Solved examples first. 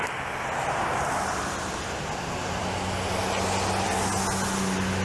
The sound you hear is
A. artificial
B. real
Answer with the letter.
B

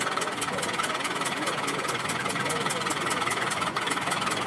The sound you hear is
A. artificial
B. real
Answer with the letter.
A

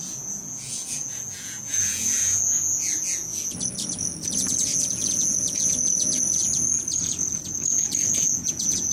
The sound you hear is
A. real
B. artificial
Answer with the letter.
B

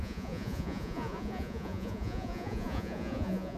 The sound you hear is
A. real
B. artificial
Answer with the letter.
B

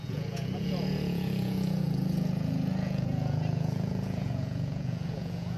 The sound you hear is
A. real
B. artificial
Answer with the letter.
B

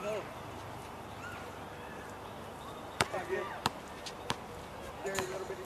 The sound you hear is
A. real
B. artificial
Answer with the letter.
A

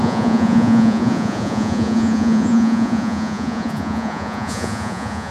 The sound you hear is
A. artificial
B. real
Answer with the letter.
A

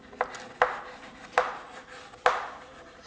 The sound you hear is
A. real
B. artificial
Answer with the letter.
A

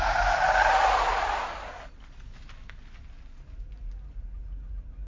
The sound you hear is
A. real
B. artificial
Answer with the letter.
A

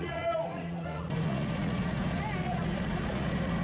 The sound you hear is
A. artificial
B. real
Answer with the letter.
A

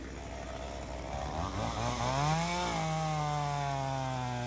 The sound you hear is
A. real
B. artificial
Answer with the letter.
A